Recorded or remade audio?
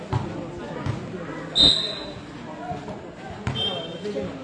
recorded